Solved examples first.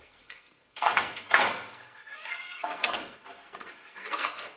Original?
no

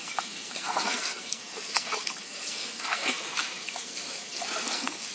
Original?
no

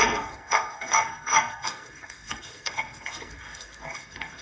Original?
no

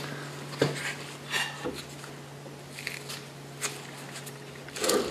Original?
yes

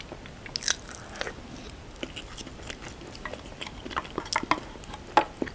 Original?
yes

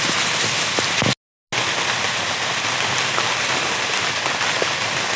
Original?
yes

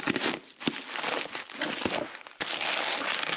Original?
yes